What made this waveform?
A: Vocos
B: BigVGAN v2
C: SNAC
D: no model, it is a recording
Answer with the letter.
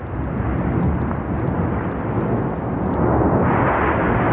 D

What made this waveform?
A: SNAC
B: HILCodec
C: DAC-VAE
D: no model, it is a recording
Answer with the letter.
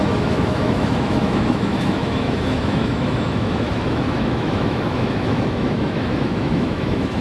C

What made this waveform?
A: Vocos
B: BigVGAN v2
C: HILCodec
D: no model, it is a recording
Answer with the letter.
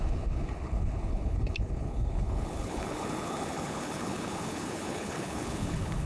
C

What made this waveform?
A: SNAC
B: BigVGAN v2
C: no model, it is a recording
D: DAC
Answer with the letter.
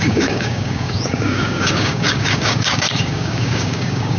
D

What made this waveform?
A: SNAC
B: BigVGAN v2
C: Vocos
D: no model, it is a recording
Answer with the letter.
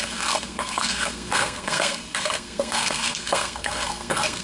A